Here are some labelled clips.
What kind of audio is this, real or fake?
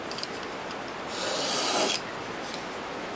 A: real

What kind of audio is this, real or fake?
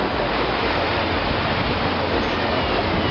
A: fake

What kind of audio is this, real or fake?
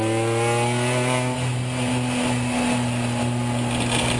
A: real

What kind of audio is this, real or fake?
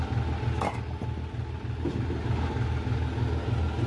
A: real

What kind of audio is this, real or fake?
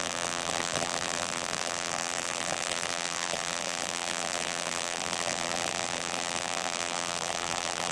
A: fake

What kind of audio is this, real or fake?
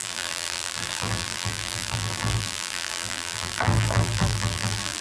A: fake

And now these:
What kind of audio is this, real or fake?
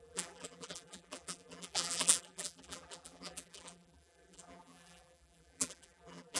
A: fake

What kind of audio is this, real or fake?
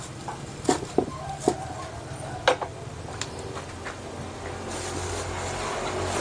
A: real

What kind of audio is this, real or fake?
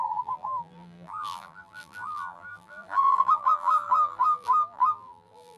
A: fake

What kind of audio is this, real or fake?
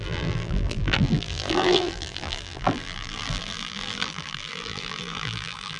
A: fake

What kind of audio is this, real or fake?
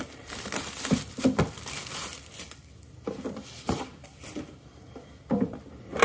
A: fake